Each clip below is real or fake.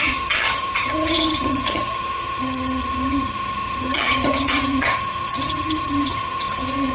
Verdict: fake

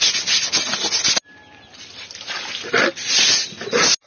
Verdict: real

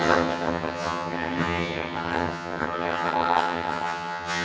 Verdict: fake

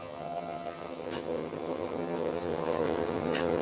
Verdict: fake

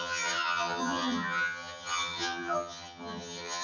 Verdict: fake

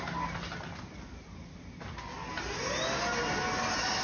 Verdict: real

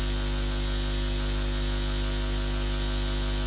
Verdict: real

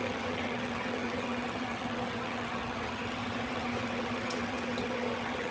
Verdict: fake